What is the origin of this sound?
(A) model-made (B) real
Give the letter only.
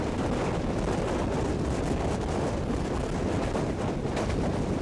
B